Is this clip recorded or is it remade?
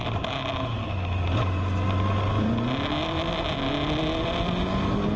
recorded